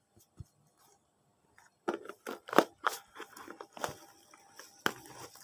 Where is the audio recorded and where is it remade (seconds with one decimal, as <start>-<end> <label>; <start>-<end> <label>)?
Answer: 0.0-5.4 recorded